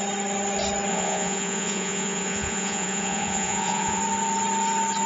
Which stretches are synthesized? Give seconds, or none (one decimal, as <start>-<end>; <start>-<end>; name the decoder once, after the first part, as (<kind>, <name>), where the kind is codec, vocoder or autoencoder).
0.9-4.0 (vocoder, Vocos)